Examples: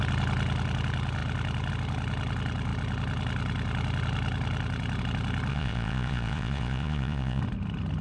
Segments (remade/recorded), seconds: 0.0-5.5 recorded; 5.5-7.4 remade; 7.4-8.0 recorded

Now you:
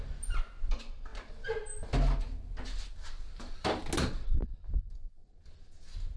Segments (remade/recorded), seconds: 0.0-6.2 recorded

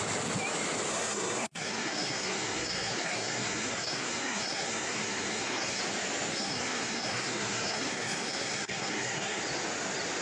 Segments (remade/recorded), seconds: 0.0-0.9 recorded; 0.9-5.8 remade; 5.8-6.3 recorded; 6.3-9.4 remade; 9.4-10.2 recorded

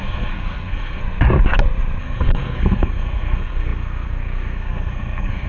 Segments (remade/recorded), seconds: 0.0-1.0 remade; 1.0-2.0 recorded; 2.0-5.5 remade

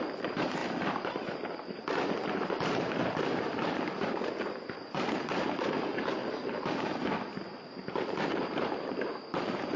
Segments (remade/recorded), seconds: 0.0-9.8 remade

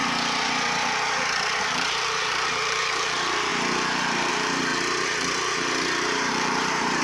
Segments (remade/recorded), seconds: 0.0-1.6 recorded; 1.6-3.5 remade; 3.5-4.3 recorded; 4.3-4.7 remade; 4.7-6.3 recorded; 6.3-7.0 remade